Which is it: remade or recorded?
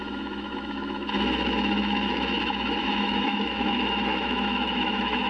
remade